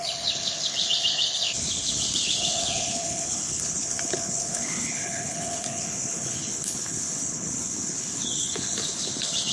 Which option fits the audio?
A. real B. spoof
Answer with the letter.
B